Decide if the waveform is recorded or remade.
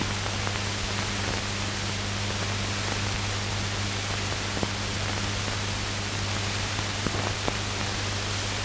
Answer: recorded